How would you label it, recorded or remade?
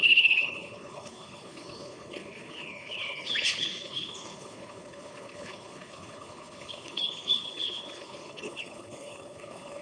remade